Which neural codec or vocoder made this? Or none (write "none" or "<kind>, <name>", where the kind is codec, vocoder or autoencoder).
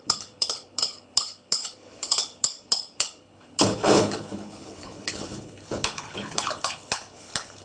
codec, HILCodec